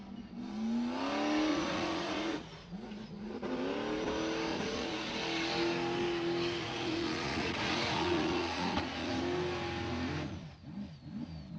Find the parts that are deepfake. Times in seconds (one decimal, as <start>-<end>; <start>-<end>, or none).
1.5-3.5; 4.5-5.1; 6.6-9.1